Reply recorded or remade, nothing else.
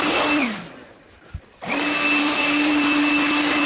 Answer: recorded